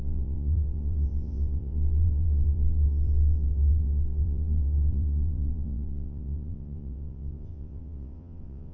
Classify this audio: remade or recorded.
remade